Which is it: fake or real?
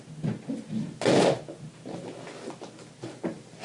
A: real